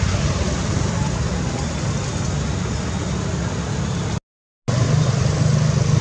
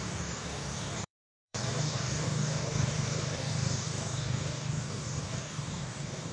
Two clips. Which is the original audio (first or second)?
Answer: first